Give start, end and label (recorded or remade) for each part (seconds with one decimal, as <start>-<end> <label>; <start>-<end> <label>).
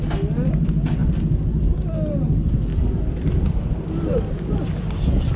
0.0-5.4 recorded